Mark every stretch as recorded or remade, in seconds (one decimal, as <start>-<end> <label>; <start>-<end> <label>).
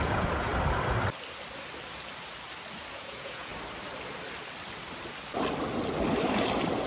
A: 0.0-0.5 remade; 0.5-2.9 recorded; 2.9-3.5 remade; 3.5-6.9 recorded